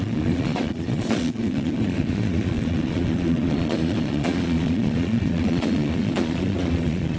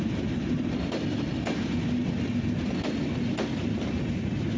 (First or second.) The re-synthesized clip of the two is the first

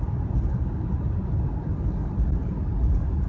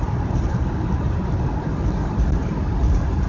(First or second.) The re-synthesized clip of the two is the second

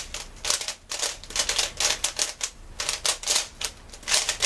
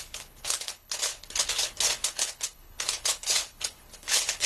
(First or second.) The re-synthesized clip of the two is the second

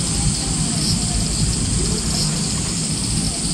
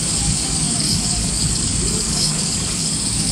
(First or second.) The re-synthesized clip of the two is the second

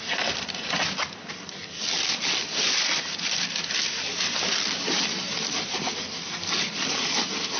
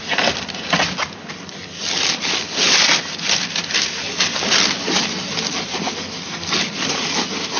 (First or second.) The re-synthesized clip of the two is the first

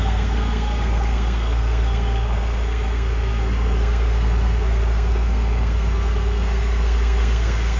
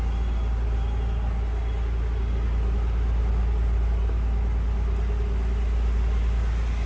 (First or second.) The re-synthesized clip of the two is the first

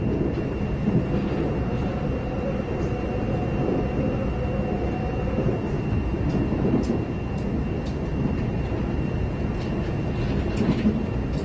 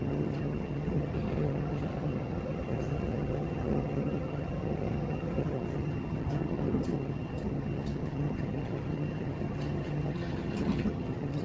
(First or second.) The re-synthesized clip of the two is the second